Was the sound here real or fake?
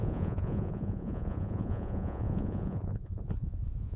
fake